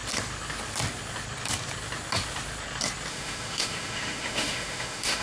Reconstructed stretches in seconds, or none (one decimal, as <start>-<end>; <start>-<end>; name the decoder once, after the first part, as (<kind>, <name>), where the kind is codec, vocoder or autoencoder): 3.1-5.2 (autoencoder, DAC-VAE)